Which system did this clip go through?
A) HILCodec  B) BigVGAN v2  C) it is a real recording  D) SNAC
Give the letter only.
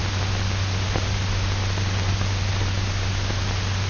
C